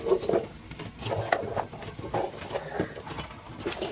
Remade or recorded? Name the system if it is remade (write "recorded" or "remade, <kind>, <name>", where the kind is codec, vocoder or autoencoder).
recorded